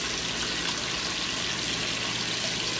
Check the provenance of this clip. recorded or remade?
recorded